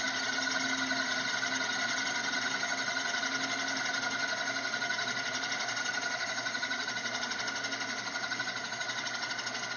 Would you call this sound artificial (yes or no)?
no